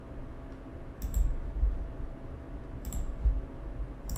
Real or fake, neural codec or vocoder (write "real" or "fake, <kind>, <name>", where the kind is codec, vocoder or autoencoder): real